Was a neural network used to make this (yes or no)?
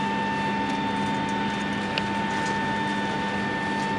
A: no